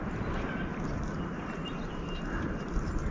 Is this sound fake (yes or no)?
no